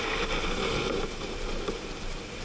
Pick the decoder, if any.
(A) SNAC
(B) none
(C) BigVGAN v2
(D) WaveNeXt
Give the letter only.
B